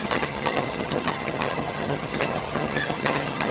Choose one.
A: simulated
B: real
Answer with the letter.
A